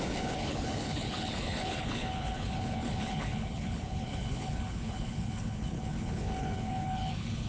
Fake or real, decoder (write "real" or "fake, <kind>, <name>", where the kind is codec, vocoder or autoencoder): fake, codec, HILCodec